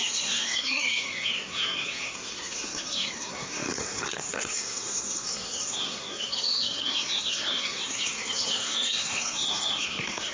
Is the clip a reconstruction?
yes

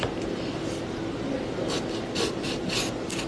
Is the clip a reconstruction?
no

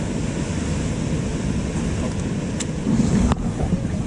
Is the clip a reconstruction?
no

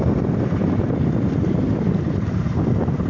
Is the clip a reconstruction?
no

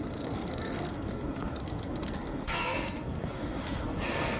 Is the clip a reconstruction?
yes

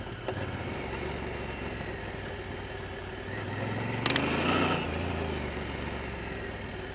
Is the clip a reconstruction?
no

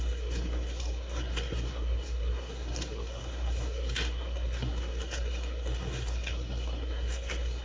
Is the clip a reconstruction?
yes